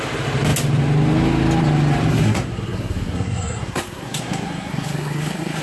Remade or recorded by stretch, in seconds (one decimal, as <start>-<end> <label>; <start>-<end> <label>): 0.0-2.1 recorded; 2.1-5.6 remade